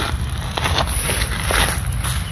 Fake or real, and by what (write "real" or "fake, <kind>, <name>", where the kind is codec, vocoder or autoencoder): real